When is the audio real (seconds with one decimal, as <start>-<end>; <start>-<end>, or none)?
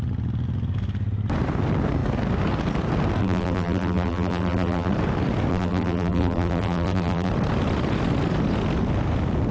0.0-3.2; 4.9-5.5; 7.3-9.5